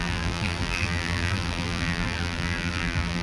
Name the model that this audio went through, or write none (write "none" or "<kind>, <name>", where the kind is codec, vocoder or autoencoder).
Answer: vocoder, BigVGAN v2